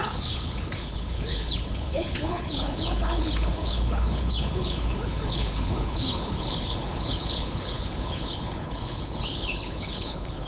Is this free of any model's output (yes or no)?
no